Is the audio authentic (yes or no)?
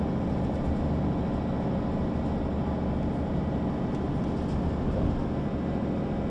yes